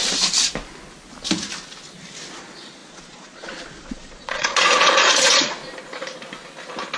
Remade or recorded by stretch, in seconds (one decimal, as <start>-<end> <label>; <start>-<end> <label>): 0.0-2.4 recorded; 2.4-5.6 remade; 5.6-7.0 recorded